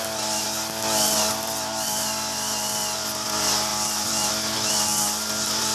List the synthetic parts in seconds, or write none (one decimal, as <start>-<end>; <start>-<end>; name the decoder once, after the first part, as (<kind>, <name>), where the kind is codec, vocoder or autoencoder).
3.7-4.3 (vocoder, BigVGAN v2)

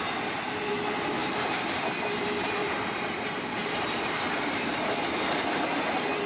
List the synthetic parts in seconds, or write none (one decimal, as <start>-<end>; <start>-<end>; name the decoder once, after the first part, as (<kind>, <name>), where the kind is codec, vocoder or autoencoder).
1.2-1.8 (vocoder, BigVGAN v2); 2.6-5.0

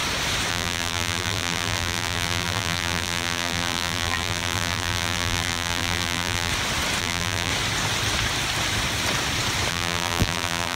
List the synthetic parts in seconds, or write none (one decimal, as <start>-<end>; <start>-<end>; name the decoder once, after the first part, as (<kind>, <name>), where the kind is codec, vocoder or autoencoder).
0.5-6.5 (vocoder, BigVGAN v2); 7.0-7.5; 9.7-10.8

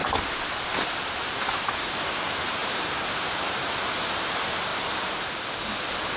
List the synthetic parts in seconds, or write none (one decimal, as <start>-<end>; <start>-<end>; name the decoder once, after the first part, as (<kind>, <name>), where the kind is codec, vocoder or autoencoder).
0.0-2.2 (vocoder, BigVGAN v2); 2.6-3.6

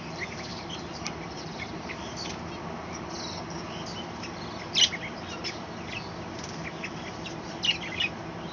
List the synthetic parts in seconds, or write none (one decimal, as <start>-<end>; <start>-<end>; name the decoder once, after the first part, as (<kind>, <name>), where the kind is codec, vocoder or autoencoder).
0.5-1.9 (vocoder, BigVGAN v2)

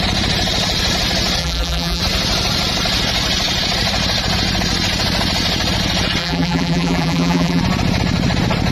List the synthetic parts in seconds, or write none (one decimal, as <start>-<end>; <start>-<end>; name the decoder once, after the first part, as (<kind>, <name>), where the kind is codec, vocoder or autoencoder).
1.4-2.0 (vocoder, BigVGAN v2); 6.2-7.6

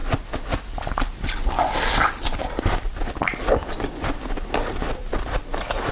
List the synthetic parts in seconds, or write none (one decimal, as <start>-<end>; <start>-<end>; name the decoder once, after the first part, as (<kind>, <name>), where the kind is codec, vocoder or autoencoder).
2.4-5.9 (vocoder, BigVGAN v2)

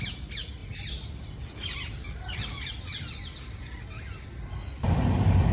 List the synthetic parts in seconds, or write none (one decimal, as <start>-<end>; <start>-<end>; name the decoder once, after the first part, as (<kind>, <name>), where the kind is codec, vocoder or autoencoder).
0.6-2.4 (vocoder, BigVGAN v2)